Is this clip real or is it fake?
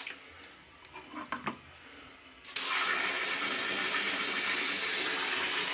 real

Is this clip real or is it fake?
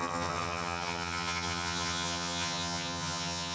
fake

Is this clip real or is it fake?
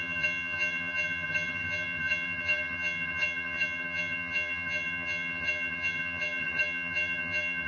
fake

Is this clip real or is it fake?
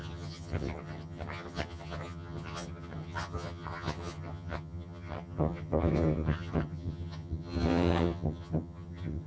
fake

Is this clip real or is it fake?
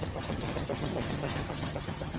fake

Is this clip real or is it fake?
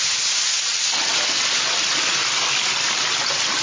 real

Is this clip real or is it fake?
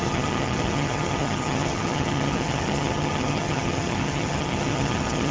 fake